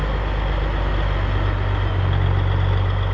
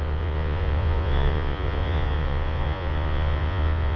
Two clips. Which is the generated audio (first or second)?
second